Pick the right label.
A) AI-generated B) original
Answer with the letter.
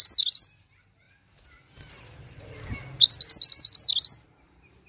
B